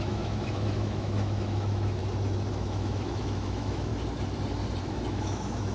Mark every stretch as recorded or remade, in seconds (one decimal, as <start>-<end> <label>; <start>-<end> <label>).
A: 0.0-2.0 remade; 2.0-2.5 recorded; 2.5-3.9 remade; 3.9-4.8 recorded; 4.8-5.7 remade